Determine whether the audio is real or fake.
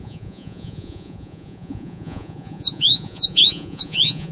fake